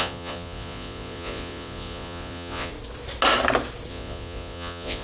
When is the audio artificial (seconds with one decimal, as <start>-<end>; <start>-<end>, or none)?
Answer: 0.0-2.7; 3.9-5.0

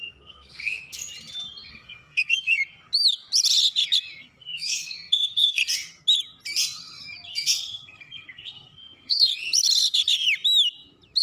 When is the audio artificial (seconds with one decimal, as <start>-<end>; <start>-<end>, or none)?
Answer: 0.0-1.0; 1.7-2.6; 4.2-5.6; 7.3-9.3